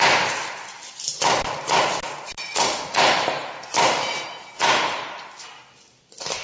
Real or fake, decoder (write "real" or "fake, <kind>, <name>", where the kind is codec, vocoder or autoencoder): real